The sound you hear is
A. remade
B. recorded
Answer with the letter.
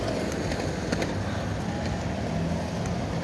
B